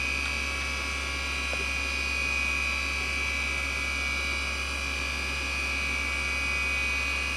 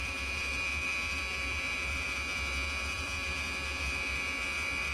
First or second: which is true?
first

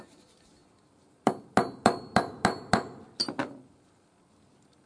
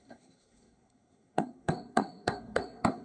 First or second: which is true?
first